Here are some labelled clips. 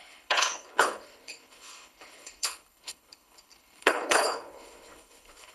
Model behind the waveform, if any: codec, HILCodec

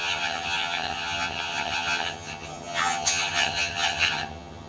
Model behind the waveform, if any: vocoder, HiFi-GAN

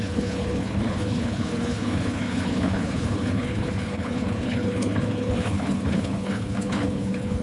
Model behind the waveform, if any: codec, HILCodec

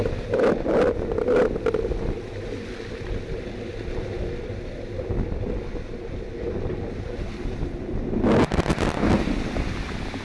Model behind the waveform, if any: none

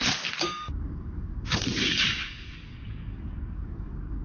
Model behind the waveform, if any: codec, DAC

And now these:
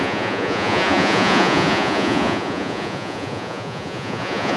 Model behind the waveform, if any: vocoder, Vocos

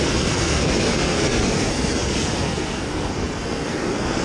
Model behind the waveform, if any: codec, SNAC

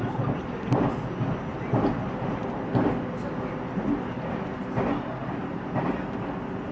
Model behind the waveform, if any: none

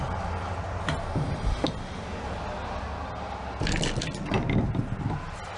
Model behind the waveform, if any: none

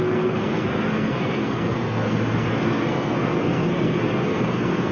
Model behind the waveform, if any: codec, SNAC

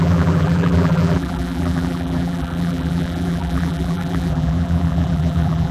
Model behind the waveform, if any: vocoder, BigVGAN v2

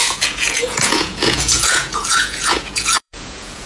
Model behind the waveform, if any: vocoder, Vocos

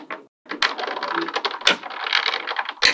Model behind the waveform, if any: none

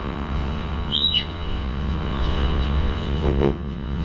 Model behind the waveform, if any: vocoder, WaveNeXt